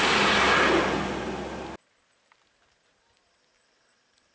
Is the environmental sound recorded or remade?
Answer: recorded